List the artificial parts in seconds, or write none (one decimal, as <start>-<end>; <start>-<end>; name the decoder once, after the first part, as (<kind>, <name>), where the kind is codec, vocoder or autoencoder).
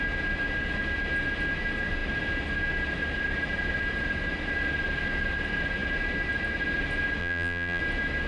7.2-7.8 (vocoder, BigVGAN v2)